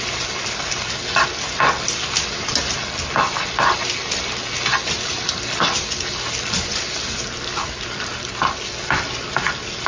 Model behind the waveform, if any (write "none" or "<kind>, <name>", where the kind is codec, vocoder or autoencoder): none